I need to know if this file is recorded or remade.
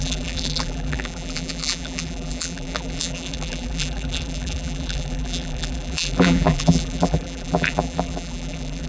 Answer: remade